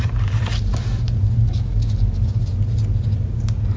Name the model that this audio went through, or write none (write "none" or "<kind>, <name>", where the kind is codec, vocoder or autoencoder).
none